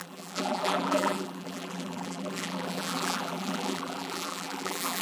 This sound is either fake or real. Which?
fake